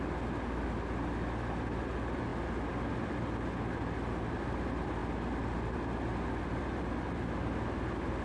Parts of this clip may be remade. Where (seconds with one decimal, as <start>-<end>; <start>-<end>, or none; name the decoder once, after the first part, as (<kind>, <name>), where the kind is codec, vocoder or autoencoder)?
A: none